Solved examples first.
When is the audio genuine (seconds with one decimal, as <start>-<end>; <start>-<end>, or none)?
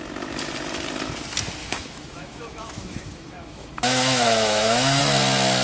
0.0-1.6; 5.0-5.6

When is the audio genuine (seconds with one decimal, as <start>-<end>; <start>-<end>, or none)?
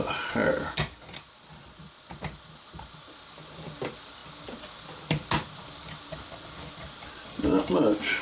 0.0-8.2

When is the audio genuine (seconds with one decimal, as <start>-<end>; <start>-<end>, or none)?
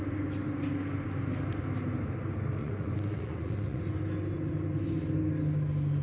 0.0-2.6; 3.8-6.0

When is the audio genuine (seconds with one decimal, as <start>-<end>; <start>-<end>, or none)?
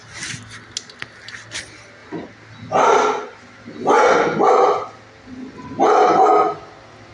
0.0-7.1